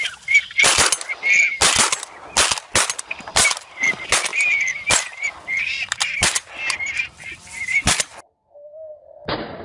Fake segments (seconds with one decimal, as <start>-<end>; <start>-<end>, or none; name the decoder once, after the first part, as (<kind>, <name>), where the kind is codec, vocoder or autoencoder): none